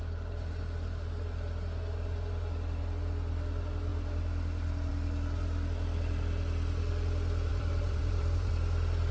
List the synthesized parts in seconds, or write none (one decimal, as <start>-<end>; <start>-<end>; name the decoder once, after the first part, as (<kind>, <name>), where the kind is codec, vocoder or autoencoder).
7.5-8.5 (vocoder, BigVGAN v2)